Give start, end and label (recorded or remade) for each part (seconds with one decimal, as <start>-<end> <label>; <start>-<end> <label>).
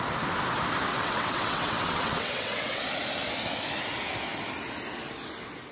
0.0-0.9 recorded; 0.9-2.8 remade; 2.8-5.7 recorded